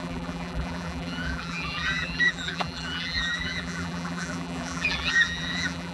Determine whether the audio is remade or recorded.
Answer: remade